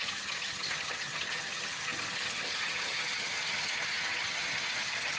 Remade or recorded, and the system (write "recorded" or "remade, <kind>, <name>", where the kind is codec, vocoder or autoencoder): remade, vocoder, HiFi-GAN